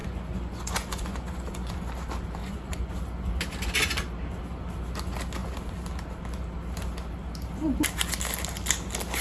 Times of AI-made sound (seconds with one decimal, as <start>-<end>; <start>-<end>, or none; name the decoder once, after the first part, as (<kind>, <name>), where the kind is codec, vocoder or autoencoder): 0.0-1.7 (vocoder, Vocos); 2.4-2.9